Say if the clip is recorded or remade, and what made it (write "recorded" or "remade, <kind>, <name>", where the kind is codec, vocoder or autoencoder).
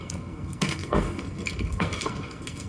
remade, codec, SNAC